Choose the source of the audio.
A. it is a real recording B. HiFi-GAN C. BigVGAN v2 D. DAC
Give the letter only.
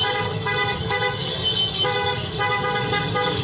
D